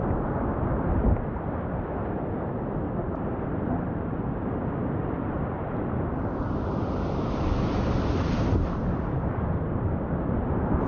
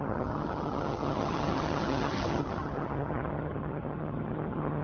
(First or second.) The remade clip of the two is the second